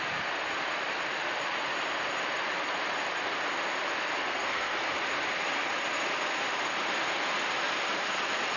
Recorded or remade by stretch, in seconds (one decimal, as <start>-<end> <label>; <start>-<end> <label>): 0.0-4.2 recorded; 4.2-4.9 remade; 4.9-8.6 recorded